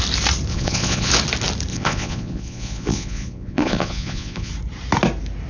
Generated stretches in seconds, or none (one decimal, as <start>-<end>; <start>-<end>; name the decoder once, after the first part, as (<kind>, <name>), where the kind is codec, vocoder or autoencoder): 0.5-1.1 (vocoder, Vocos); 1.7-4.5